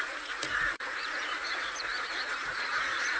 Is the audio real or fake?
fake